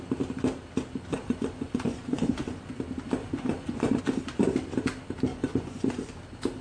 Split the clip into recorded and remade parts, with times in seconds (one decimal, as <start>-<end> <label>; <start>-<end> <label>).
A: 0.0-1.1 recorded; 1.1-2.7 remade; 2.7-3.2 recorded; 3.2-4.0 remade; 4.0-5.3 recorded; 5.3-6.1 remade; 6.1-6.6 recorded